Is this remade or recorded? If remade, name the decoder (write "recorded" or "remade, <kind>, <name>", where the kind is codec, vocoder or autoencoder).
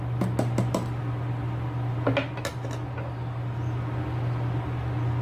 recorded